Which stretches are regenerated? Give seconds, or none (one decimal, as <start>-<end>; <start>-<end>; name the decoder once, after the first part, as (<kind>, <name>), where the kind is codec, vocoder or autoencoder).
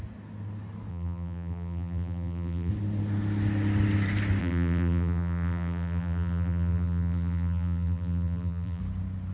0.9-2.7 (vocoder, BigVGAN v2); 4.4-8.8